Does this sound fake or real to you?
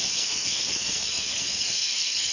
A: fake